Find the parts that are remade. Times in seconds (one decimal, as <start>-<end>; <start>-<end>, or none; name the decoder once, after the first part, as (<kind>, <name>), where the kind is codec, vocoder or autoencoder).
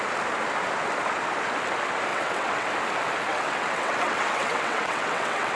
2.1-2.7 (vocoder, WaveNeXt); 3.3-5.6